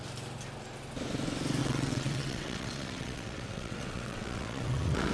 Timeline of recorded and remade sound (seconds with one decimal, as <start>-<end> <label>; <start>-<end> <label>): 0.0-1.6 recorded; 1.6-5.1 remade